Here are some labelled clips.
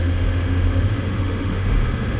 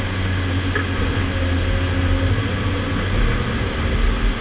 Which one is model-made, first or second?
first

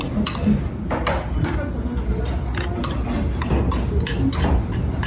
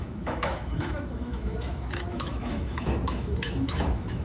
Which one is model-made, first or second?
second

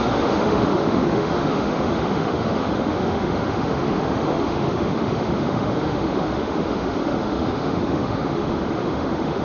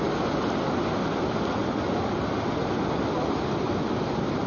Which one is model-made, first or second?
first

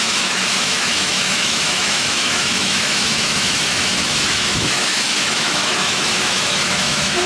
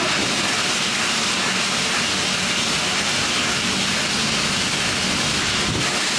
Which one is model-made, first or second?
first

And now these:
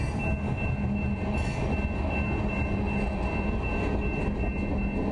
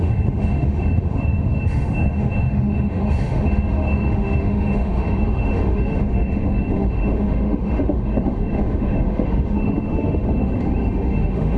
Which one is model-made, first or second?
second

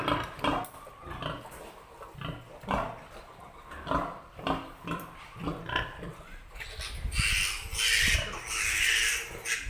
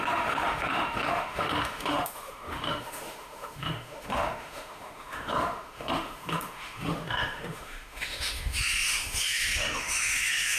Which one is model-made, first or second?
second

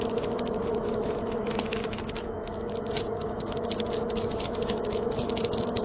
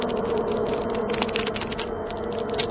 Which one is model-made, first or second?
first